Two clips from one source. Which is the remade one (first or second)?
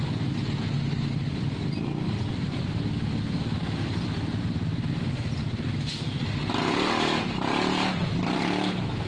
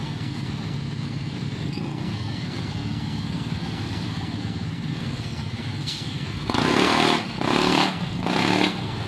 second